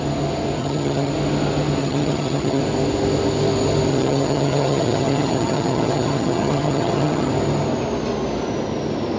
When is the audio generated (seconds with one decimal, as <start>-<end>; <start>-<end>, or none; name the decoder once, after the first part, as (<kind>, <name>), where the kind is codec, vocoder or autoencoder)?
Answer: 0.6-1.1 (vocoder, HiFi-GAN); 1.8-2.6; 3.9-7.3